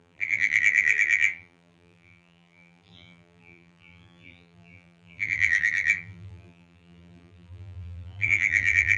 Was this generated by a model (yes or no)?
yes